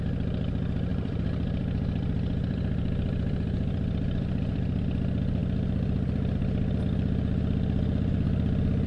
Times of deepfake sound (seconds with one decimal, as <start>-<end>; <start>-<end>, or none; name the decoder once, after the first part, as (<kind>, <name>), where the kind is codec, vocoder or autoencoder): 0.9-4.8 (vocoder, BigVGAN v2)